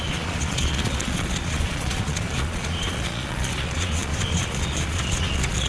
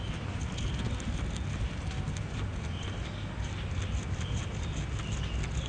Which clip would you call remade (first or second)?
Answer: first